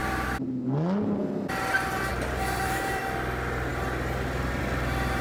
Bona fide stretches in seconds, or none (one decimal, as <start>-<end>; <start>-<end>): 0.0-2.1; 3.0-5.2